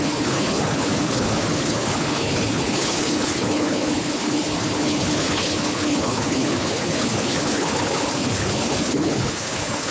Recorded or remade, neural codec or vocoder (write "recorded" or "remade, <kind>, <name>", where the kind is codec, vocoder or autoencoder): remade, codec, HILCodec